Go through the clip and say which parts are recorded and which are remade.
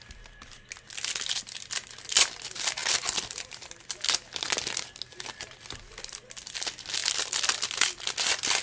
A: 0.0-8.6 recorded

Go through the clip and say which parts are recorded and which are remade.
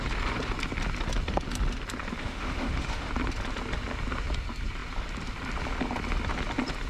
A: 0.0-2.2 recorded; 2.2-3.1 remade; 3.1-6.9 recorded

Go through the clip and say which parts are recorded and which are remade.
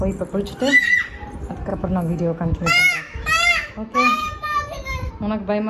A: 0.0-1.7 recorded; 1.7-5.1 remade; 5.1-5.7 recorded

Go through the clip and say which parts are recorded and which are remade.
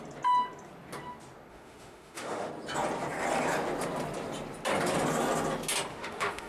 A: 0.0-1.5 recorded; 1.5-2.5 remade; 2.5-5.9 recorded; 5.9-6.5 remade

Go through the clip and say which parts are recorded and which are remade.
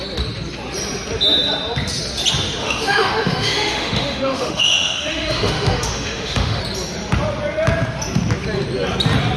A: 0.0-2.6 recorded; 2.6-6.6 remade; 6.6-9.4 recorded